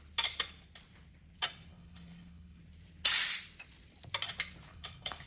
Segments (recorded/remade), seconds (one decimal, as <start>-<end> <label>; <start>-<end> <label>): 0.0-1.7 recorded; 1.7-2.6 remade; 2.6-4.7 recorded; 4.7-5.3 remade